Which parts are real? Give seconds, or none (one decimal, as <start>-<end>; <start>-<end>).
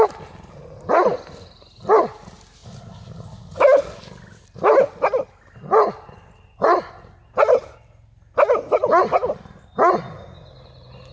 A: 0.0-11.1